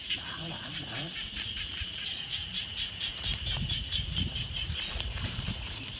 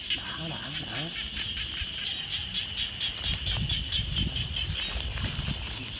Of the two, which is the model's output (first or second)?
first